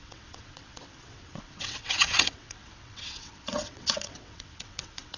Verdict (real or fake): fake